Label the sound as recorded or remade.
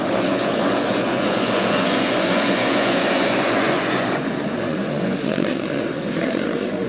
remade